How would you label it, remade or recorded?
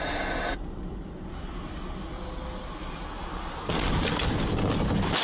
recorded